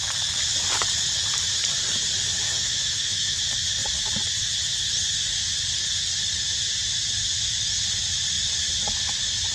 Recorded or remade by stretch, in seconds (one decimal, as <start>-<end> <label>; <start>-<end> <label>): 0.0-2.5 recorded; 2.5-3.4 remade; 3.4-9.5 recorded